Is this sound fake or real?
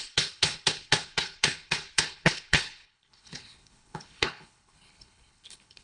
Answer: fake